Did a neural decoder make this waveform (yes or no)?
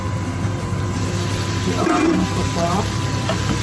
yes